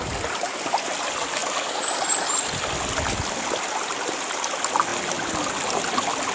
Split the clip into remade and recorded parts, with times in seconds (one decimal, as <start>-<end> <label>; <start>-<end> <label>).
0.0-6.3 recorded